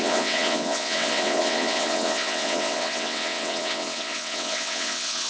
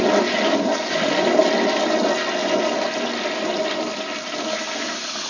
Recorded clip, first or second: second